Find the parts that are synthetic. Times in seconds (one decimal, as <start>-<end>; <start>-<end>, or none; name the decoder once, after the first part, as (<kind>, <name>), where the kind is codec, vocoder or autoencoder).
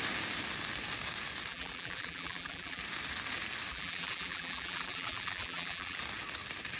1.5-2.8 (vocoder, BigVGAN v2); 3.7-6.0